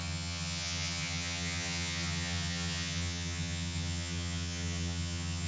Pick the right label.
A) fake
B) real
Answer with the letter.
A